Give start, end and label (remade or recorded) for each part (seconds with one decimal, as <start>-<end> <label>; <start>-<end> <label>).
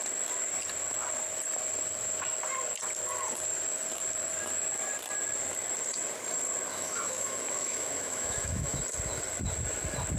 0.0-6.7 recorded; 6.7-8.8 remade; 8.8-10.2 recorded